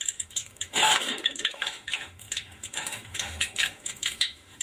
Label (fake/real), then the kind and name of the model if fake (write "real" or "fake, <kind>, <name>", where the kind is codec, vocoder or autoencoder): fake, autoencoder, DAC-VAE